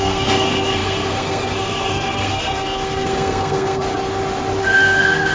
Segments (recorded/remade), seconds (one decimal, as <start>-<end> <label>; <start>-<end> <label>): 0.0-3.8 remade; 3.8-4.6 recorded; 4.6-5.3 remade